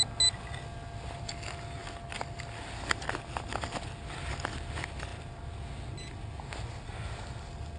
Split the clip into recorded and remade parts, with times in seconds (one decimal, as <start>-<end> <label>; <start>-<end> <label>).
0.0-7.8 recorded